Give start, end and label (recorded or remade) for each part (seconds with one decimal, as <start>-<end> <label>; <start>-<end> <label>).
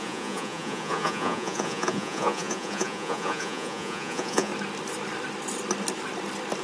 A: 0.0-4.5 remade; 4.5-6.6 recorded